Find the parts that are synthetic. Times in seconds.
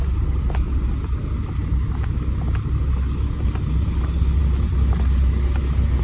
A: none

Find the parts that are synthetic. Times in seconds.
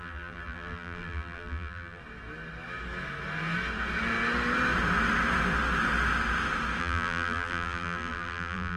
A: 0.0-2.0 (vocoder, BigVGAN v2); 6.8-8.8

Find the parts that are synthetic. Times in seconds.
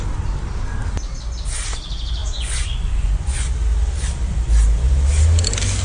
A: 2.2-3.5 (vocoder, Vocos)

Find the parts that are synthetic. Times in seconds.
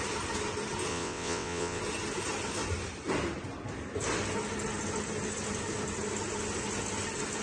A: 0.9-1.8 (vocoder, WaveNeXt)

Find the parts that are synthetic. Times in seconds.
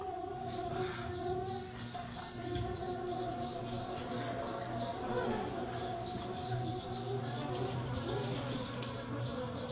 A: none